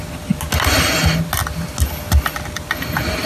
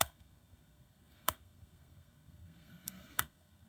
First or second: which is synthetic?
second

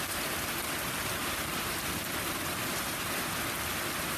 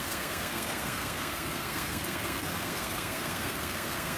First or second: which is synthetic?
second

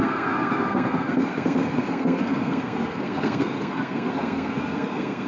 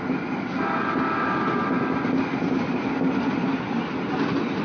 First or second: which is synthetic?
first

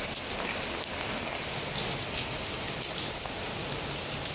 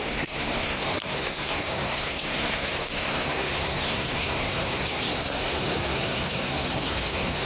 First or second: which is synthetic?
second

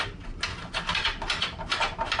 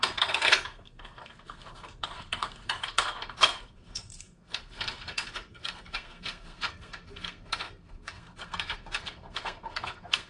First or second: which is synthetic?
second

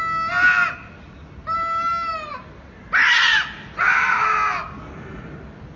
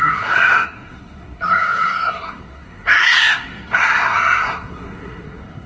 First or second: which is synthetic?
second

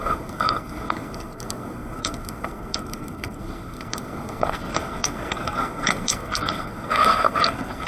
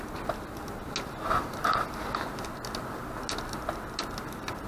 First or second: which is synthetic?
first